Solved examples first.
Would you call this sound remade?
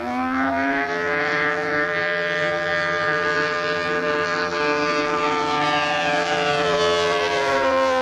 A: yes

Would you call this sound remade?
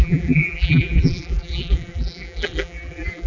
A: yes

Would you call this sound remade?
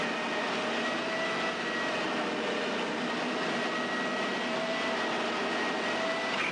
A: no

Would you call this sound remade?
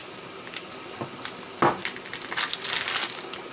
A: no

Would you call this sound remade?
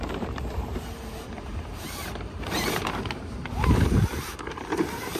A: yes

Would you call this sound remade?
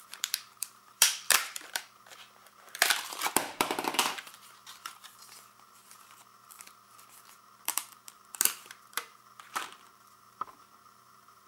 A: yes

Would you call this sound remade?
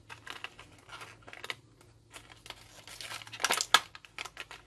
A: no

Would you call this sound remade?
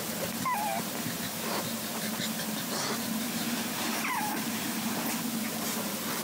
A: no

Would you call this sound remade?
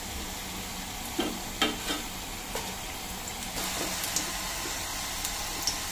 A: no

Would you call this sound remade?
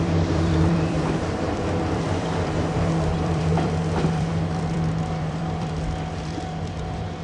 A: yes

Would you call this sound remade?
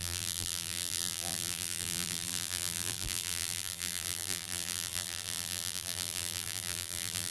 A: yes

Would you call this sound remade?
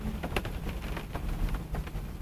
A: no